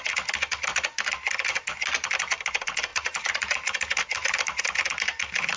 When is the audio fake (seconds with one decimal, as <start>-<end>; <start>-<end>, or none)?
2.9-4.6